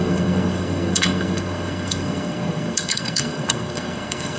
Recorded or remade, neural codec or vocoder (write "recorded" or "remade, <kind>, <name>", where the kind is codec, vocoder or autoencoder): remade, codec, SNAC